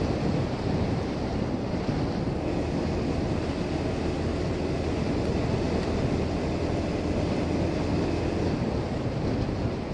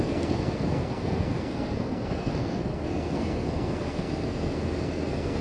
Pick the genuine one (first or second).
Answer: first